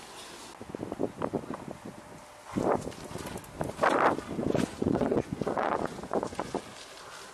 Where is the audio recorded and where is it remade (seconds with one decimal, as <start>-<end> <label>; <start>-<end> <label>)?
0.0-4.4 recorded; 4.4-6.6 remade; 6.6-7.3 recorded